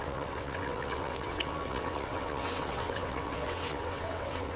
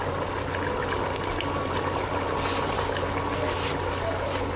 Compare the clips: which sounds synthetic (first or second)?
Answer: first